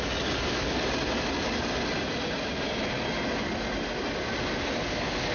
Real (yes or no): yes